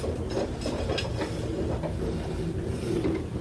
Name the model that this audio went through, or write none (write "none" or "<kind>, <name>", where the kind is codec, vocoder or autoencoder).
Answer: none